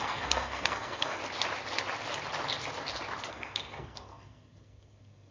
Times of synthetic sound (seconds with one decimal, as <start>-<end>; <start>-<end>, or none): 0.0-1.2; 3.3-5.3

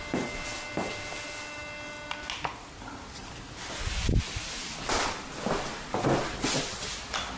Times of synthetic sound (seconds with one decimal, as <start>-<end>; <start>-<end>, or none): none

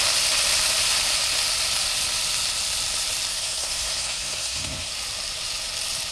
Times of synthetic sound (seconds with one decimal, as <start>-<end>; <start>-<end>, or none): 3.3-4.9